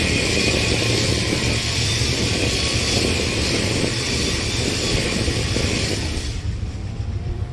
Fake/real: fake